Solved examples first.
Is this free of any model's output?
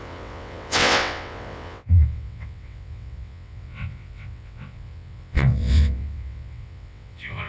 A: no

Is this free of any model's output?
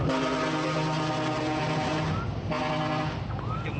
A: yes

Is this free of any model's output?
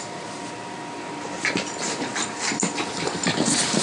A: yes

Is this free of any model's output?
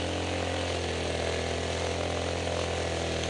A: yes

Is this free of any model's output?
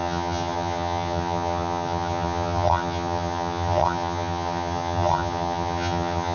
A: no